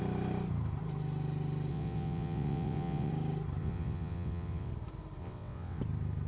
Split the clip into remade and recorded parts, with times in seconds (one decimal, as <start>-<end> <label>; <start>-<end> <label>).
0.0-1.7 recorded; 1.7-3.1 remade; 3.1-3.6 recorded; 3.6-4.7 remade; 4.7-5.2 recorded; 5.2-5.8 remade; 5.8-6.3 recorded